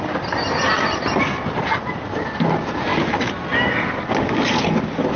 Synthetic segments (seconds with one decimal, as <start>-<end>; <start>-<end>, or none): none

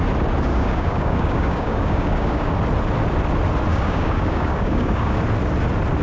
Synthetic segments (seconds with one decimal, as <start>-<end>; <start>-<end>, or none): 0.5-2.5; 3.7-5.2

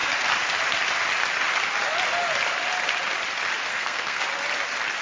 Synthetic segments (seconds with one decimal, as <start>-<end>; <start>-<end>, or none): 3.7-4.2

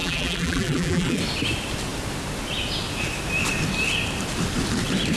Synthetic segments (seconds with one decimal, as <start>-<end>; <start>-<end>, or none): 0.0-1.2